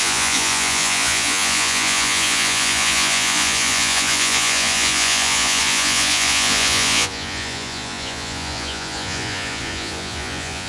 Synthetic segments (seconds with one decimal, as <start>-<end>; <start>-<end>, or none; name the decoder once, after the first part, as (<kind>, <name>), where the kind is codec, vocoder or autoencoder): 0.0-10.7 (vocoder, Vocos)